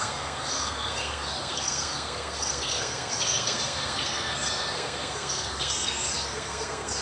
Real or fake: fake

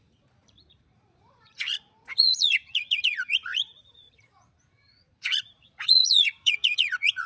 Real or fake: fake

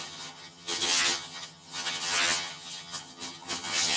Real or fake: fake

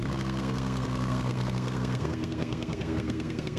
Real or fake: fake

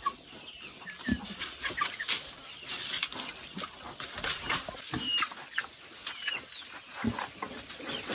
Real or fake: real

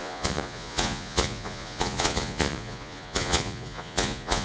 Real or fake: fake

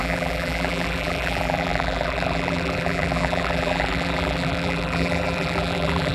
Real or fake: fake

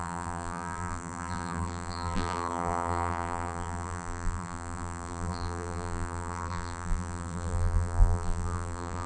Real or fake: fake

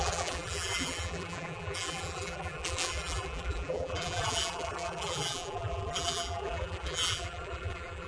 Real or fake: fake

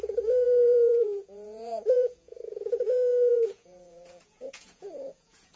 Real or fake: fake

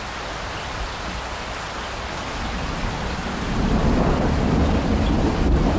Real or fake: real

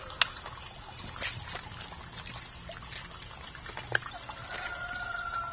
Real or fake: real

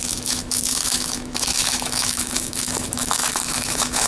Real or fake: fake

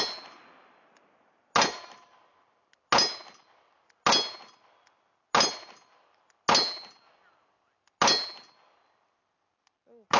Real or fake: real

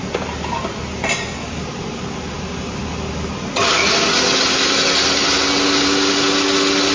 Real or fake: real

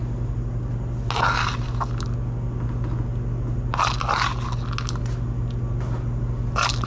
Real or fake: real